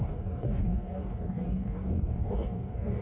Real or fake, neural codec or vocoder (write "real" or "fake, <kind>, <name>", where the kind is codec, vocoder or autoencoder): fake, codec, DAC